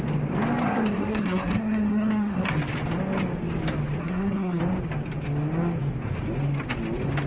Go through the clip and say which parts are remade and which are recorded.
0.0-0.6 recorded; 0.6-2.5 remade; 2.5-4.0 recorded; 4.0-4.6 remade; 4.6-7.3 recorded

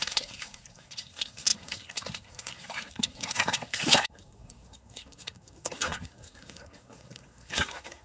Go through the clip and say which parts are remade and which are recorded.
0.0-8.0 remade

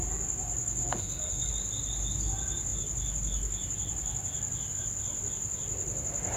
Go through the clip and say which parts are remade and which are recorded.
0.0-0.8 recorded; 0.8-1.5 remade; 1.5-6.4 recorded

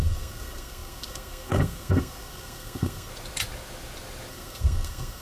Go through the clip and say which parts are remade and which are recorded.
0.0-3.1 remade; 3.1-4.3 recorded; 4.3-5.2 remade